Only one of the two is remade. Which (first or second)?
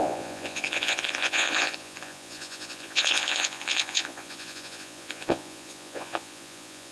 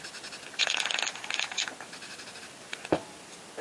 first